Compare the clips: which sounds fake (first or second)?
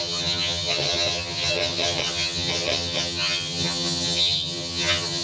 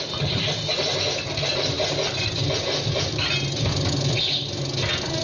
first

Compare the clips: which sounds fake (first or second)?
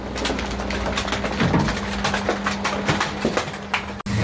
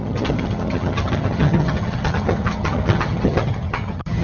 second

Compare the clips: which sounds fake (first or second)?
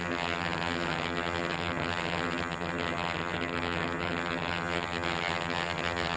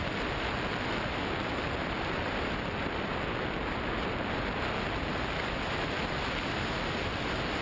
first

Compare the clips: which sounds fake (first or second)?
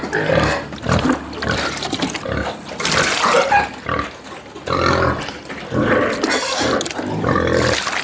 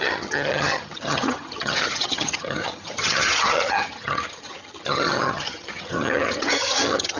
second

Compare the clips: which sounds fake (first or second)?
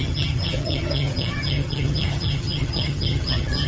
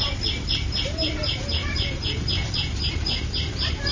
first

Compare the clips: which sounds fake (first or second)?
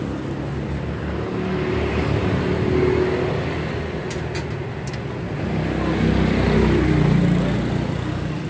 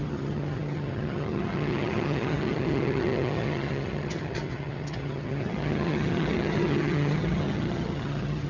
second